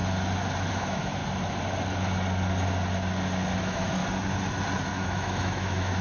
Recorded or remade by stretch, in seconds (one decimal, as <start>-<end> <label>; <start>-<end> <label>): 0.0-0.7 recorded; 0.7-1.2 remade; 1.2-3.6 recorded; 3.6-4.0 remade; 4.0-4.9 recorded; 4.9-6.0 remade